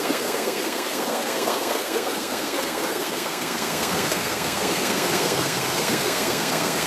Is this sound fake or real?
fake